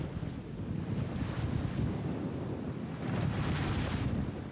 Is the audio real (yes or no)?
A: yes